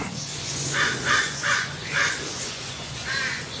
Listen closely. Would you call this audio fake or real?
fake